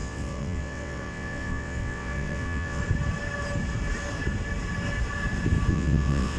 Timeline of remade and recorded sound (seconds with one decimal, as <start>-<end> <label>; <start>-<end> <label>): 0.0-2.8 remade; 2.8-5.7 recorded; 5.7-6.4 remade